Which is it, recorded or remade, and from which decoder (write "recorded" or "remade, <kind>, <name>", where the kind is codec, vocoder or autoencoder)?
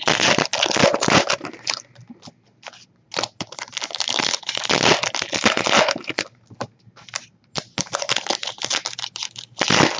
recorded